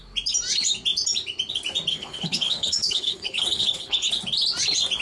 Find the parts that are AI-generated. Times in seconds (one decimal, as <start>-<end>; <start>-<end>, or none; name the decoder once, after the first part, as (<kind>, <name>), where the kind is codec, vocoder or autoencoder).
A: 1.9-4.1 (codec, HILCodec)